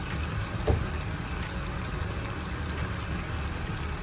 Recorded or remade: recorded